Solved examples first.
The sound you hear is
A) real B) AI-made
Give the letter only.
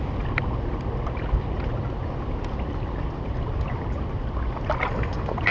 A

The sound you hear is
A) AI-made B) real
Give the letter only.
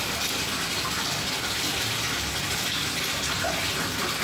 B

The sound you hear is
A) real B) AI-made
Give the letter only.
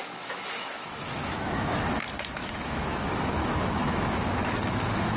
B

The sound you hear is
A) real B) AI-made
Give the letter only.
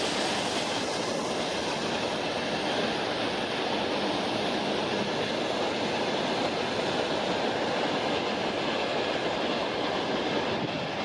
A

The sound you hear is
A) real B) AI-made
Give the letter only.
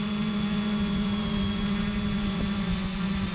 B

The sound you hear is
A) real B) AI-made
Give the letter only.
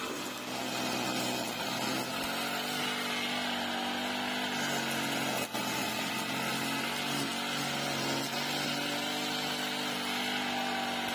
A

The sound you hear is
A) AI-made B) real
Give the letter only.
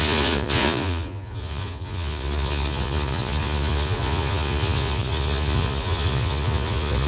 A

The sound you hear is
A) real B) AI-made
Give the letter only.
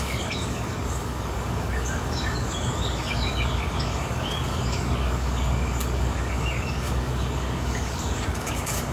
B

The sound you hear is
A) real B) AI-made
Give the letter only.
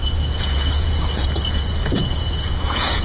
B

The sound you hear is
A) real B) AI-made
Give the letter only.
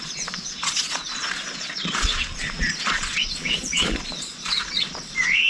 B